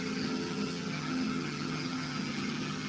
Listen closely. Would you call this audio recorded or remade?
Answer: remade